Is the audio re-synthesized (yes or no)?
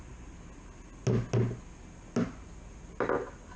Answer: no